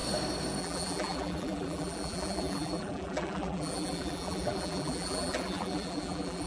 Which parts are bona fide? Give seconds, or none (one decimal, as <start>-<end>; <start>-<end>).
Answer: 0.0-0.6

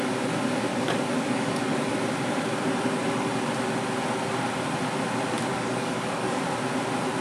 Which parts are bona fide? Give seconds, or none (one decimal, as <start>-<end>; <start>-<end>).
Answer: 0.0-0.7; 1.9-5.5; 6.4-7.2

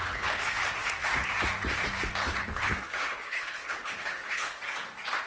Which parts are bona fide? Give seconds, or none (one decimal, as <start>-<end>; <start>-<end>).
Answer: 0.6-2.2; 4.6-5.3

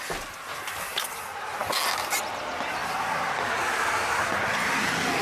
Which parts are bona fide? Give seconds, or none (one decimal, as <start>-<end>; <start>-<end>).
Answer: 0.0-5.2

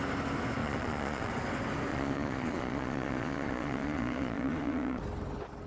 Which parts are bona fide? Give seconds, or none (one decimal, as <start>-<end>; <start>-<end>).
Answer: 0.0-0.6; 1.3-1.9; 5.0-5.7

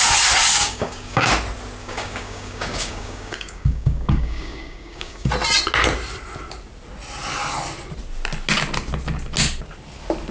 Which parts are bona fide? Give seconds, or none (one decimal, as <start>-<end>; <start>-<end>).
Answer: 0.0-0.6; 1.3-1.8; 5.3-10.3

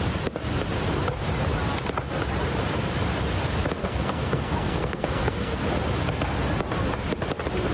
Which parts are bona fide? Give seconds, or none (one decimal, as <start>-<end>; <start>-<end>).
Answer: 0.0-3.8; 5.6-7.7